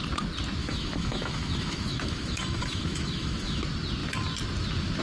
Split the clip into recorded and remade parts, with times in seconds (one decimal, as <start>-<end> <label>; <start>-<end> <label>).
0.0-0.6 recorded; 0.6-3.6 remade; 3.6-5.0 recorded